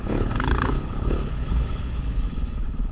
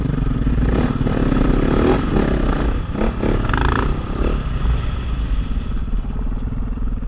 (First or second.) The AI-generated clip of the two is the first